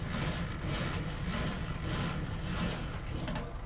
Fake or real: real